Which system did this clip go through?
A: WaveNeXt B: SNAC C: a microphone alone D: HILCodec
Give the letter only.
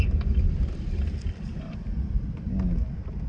C